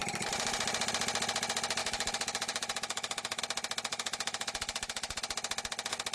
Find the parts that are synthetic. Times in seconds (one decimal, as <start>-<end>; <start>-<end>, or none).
1.8-3.4; 3.9-5.2